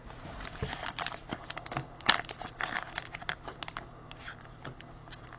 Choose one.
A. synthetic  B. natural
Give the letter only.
B